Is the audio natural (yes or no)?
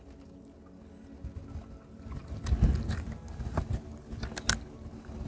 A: yes